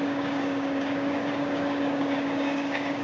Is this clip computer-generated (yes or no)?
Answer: yes